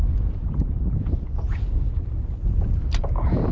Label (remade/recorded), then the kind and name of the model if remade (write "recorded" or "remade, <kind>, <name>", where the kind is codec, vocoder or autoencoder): recorded